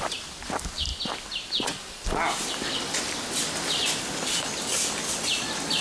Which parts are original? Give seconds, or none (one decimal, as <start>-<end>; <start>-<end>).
0.0-5.8